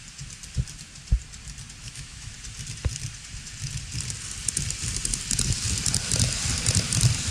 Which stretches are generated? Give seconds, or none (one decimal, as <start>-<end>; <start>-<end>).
1.8-2.3